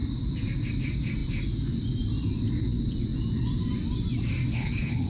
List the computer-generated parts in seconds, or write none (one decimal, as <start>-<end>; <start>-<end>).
4.5-5.1